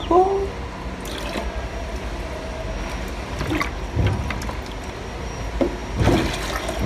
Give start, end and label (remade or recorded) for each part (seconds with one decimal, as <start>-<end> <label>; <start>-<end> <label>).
0.0-6.9 recorded